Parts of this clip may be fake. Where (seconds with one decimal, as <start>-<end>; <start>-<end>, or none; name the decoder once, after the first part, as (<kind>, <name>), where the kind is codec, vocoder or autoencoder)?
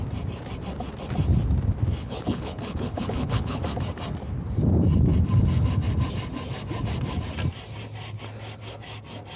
2.0-3.6 (codec, HILCodec)